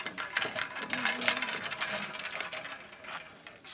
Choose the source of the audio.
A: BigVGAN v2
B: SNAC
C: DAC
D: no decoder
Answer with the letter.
D